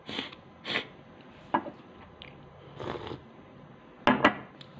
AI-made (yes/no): no